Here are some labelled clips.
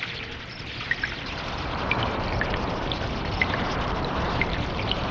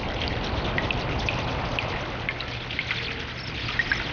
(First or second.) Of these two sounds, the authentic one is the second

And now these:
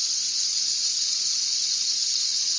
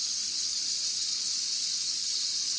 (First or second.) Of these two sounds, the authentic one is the second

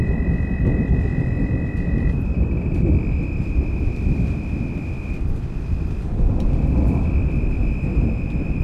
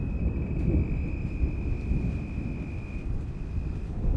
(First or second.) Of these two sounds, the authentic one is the second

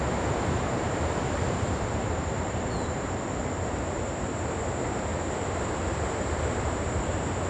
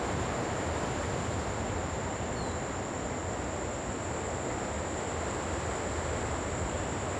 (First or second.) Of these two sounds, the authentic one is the second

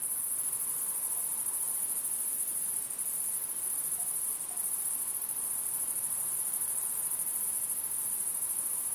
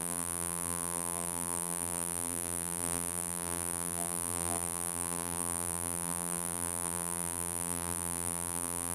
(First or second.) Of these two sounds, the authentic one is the first